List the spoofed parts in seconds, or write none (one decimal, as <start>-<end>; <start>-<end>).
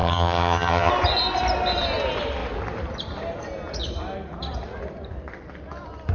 0.0-0.9